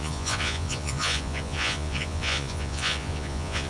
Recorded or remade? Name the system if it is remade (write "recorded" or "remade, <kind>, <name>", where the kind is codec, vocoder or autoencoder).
remade, vocoder, Vocos